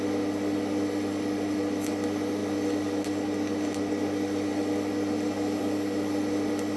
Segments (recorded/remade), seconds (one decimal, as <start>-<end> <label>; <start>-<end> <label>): 0.0-6.8 recorded

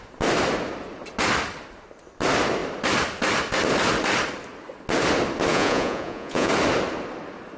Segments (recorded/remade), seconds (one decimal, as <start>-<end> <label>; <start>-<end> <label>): 0.0-5.5 recorded; 5.5-6.5 remade; 6.5-7.6 recorded

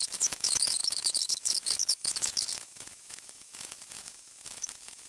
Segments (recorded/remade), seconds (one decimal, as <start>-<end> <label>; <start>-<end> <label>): 0.0-5.1 remade

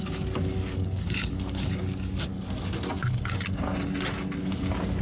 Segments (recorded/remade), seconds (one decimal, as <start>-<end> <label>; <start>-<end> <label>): 0.0-2.3 remade; 2.3-5.0 recorded

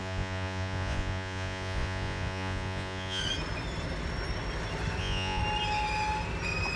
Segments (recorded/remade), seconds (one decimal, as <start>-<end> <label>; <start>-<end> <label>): 0.0-3.2 remade; 3.2-5.0 recorded; 5.0-5.4 remade; 5.4-6.8 recorded